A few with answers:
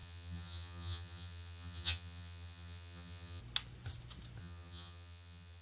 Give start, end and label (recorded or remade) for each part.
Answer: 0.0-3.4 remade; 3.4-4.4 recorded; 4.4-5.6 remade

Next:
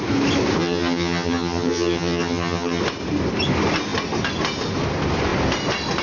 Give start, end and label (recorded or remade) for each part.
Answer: 0.0-0.6 recorded; 0.6-2.8 remade; 2.8-6.0 recorded

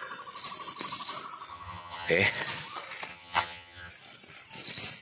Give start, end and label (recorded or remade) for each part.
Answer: 0.0-1.5 recorded; 1.5-2.1 remade; 2.1-3.1 recorded; 3.1-3.9 remade; 3.9-5.0 recorded